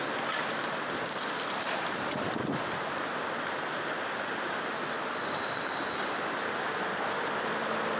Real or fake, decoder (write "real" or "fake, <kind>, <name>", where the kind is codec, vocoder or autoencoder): real